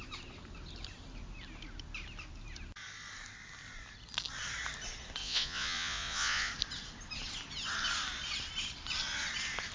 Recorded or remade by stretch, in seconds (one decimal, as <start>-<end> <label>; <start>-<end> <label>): 0.0-5.2 recorded; 5.2-6.5 remade; 6.5-9.7 recorded